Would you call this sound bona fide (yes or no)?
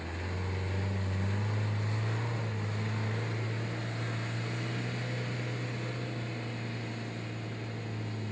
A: yes